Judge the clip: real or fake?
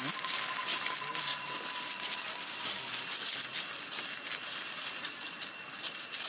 real